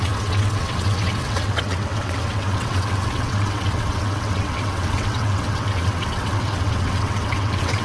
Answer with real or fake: fake